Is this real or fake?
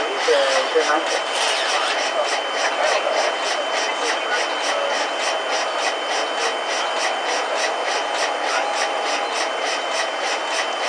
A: real